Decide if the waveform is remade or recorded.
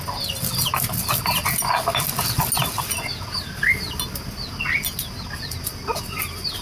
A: recorded